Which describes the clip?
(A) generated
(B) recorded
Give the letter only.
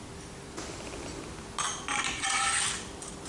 B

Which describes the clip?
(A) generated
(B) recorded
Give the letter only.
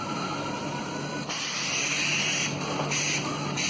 B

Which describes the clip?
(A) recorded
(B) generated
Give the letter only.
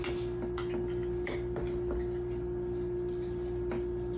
A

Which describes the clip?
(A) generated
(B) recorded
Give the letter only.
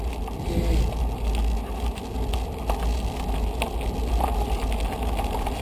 B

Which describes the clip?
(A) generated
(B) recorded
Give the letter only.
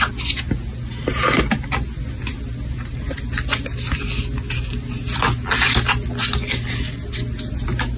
B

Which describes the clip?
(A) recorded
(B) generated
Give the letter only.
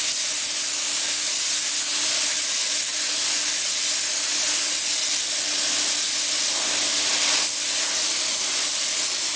A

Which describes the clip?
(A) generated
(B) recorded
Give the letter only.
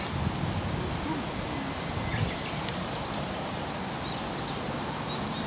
B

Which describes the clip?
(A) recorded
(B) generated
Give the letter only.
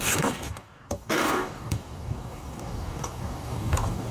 B